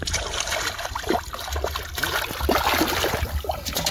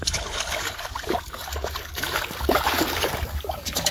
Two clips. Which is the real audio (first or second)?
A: first